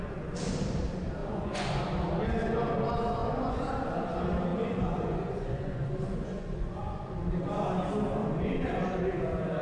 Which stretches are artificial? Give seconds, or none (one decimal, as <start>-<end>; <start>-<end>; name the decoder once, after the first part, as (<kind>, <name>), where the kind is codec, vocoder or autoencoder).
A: 1.2-1.8 (vocoder, Vocos); 3.2-3.7; 4.5-7.2; 8.2-9.6